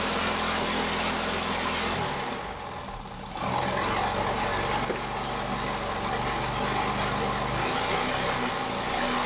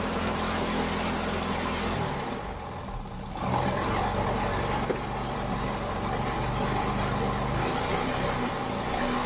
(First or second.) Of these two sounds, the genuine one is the first